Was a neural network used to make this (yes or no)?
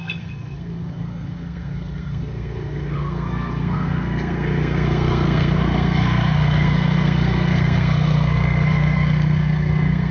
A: yes